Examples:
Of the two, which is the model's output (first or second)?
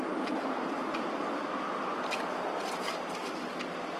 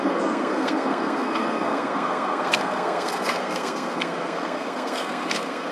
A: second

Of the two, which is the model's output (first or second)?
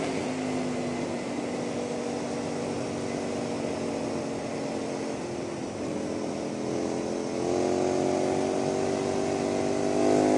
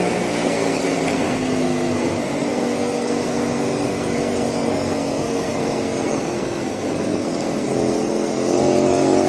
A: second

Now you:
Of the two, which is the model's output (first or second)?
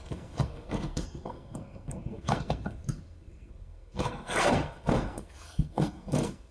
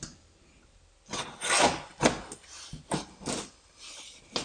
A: first